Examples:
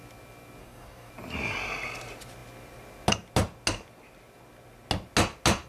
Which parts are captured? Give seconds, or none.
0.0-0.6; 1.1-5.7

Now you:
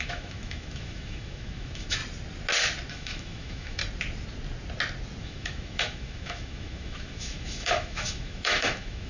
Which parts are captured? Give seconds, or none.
2.0-2.9; 3.8-5.2